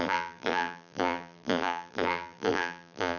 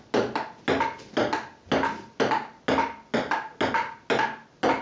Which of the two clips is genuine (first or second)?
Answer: second